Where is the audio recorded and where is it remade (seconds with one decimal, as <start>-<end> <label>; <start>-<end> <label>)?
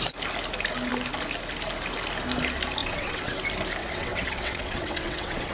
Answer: 0.0-2.8 recorded; 2.8-3.4 remade; 3.4-3.8 recorded; 3.8-5.5 remade